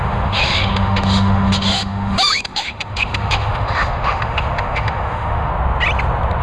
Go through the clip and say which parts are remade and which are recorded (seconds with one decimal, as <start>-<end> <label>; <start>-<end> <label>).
0.0-5.5 remade; 5.5-6.4 recorded